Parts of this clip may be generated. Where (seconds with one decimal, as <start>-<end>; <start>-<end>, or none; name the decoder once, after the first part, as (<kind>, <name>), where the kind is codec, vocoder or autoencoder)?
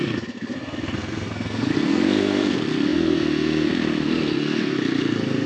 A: 0.0-5.5 (codec, SNAC)